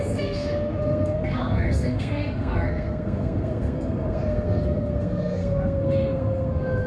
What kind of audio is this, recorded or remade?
remade